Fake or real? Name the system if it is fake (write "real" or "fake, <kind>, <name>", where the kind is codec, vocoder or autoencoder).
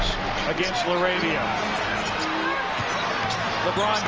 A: real